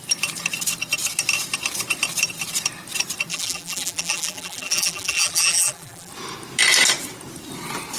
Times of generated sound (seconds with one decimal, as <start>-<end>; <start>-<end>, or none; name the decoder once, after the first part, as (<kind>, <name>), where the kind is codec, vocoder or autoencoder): 3.3-6.1 (vocoder, BigVGAN v2)